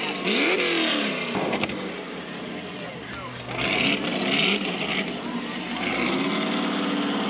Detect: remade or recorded recorded